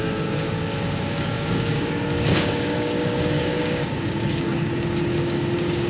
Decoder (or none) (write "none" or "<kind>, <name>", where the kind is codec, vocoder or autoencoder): codec, DAC